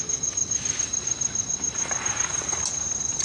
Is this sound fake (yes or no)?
no